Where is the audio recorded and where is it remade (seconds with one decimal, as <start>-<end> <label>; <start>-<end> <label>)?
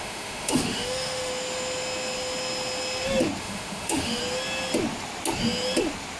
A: 0.0-1.3 remade; 1.3-3.4 recorded; 3.4-4.2 remade; 4.2-6.2 recorded